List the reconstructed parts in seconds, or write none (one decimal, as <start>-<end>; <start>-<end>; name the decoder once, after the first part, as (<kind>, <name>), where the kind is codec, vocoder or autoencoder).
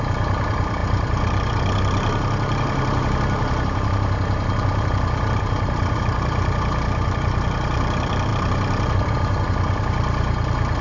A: 0.0-10.8 (vocoder, BigVGAN v2)